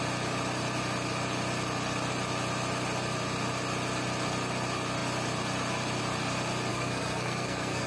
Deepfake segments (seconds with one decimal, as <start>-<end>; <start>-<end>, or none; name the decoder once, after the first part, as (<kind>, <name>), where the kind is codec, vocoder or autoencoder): 6.7-7.9 (codec, SNAC)

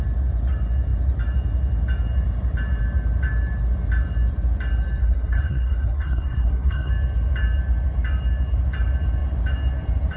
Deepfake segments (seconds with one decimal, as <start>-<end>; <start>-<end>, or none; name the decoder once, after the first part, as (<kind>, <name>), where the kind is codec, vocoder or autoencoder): 5.0-6.9 (codec, SNAC)

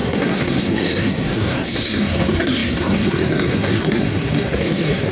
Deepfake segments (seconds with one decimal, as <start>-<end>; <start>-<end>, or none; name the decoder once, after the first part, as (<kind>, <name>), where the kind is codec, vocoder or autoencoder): 0.0-5.1 (codec, SNAC)

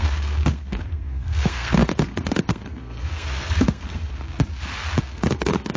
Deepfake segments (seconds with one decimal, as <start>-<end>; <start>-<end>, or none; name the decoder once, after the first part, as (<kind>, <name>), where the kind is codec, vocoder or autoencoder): 0.0-4.1 (codec, SNAC); 5.0-5.8